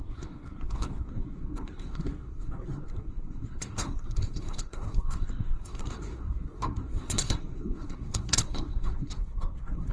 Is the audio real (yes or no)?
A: no